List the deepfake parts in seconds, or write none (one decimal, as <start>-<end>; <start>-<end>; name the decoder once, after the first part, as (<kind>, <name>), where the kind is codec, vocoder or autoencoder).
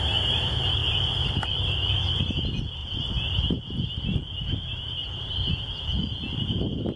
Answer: none